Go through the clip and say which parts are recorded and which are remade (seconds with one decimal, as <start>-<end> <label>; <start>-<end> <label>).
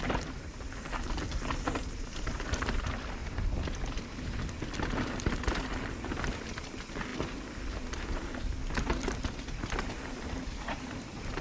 0.0-3.2 remade; 3.2-5.8 recorded; 5.8-7.1 remade; 7.1-7.7 recorded; 7.7-11.4 remade